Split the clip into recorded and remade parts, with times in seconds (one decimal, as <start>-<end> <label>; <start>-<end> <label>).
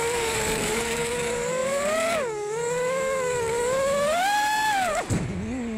0.0-5.8 remade